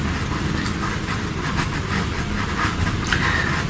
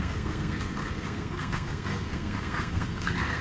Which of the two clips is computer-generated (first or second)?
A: second